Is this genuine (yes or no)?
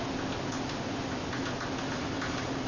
yes